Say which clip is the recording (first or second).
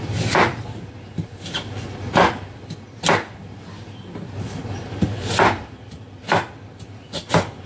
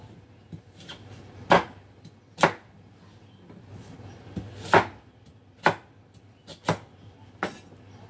second